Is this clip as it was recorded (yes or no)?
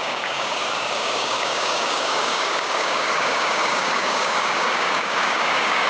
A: no